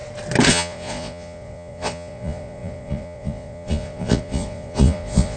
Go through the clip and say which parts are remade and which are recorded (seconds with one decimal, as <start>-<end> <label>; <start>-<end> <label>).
0.0-0.5 recorded; 0.5-5.4 remade